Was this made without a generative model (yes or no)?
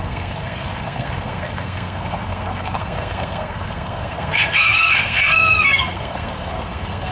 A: no